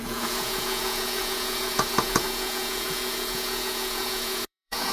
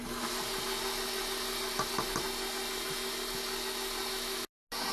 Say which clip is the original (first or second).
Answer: second